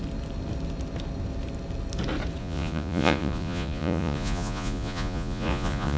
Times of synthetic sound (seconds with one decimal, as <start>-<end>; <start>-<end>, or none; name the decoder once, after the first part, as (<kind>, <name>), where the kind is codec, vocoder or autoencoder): 2.4-6.0 (vocoder, Vocos)